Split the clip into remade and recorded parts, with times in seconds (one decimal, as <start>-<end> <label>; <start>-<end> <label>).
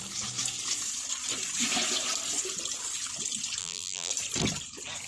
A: 0.0-3.6 recorded; 3.6-4.1 remade; 4.1-5.1 recorded